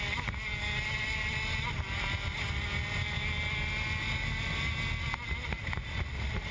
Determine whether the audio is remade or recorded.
recorded